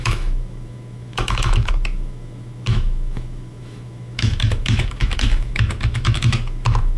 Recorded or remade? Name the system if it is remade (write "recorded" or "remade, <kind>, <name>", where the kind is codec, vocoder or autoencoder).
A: remade, autoencoder, DAC-VAE